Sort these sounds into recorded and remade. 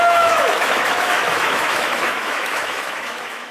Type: remade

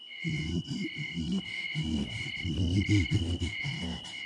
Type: recorded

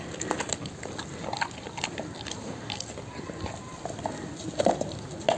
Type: recorded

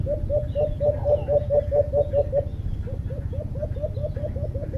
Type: recorded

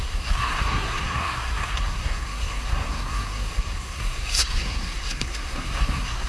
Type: remade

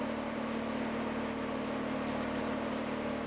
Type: recorded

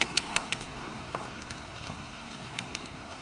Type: remade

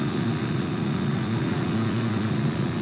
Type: remade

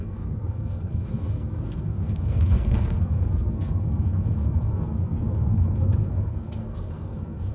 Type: remade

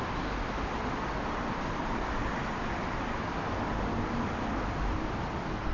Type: recorded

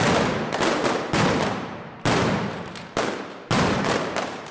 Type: remade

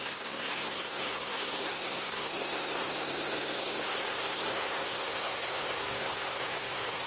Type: remade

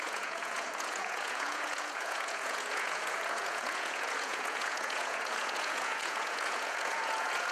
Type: remade